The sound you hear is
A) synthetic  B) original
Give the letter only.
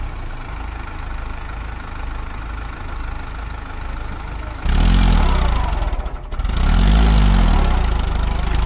B